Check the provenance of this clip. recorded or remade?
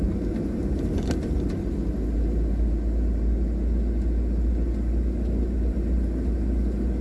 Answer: recorded